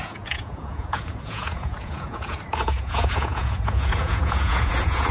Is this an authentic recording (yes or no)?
no